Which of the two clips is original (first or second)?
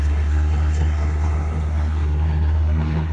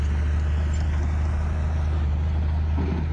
second